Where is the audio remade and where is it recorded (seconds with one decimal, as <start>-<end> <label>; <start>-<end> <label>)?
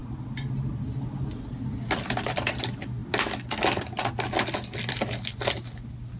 0.0-6.2 recorded